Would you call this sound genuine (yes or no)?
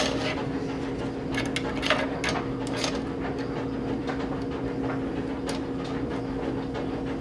yes